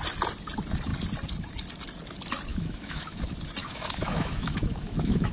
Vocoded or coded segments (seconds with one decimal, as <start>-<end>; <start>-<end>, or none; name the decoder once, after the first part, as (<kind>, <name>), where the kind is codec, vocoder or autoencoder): 2.5-3.2 (autoencoder, DAC-VAE); 3.6-5.3